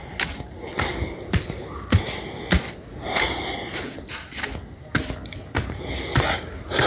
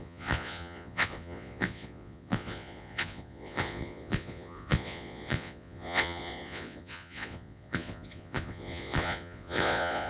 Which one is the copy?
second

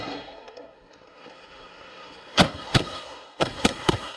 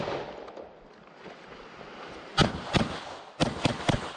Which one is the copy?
first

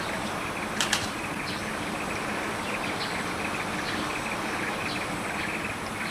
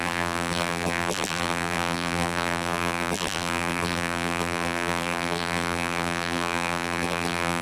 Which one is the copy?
second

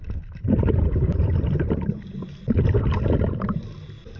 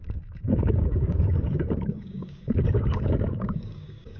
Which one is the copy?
second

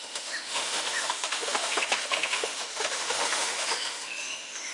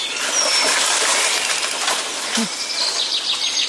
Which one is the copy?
first